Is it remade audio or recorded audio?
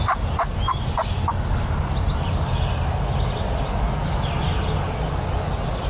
recorded